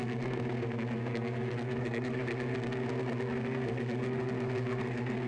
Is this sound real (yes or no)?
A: no